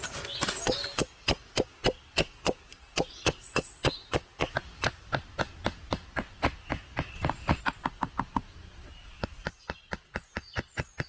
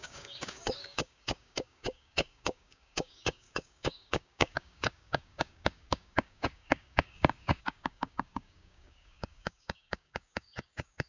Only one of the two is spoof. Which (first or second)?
second